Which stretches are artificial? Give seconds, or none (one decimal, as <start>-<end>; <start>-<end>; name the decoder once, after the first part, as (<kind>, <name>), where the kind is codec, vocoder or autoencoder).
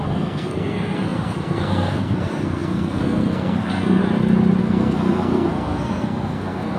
0.0-4.0 (codec, SNAC); 4.6-6.8